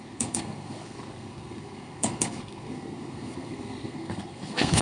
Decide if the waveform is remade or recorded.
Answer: remade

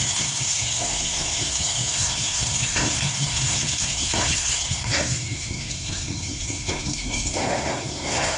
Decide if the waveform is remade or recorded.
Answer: remade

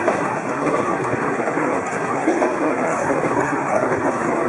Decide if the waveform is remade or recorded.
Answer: remade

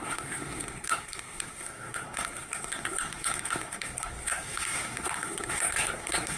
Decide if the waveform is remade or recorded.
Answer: remade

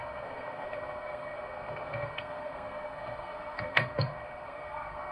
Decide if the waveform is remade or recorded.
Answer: remade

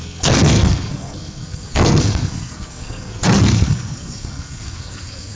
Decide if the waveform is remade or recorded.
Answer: remade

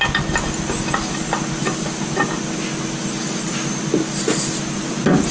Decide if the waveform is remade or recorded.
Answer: recorded